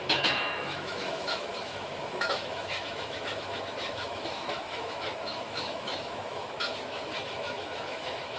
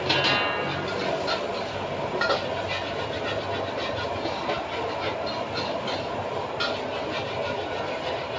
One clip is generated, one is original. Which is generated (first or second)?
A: first